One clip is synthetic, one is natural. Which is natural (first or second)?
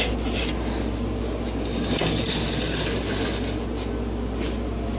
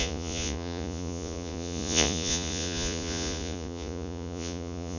first